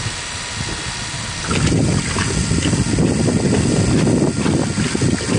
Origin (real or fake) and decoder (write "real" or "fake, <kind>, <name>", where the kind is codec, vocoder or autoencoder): real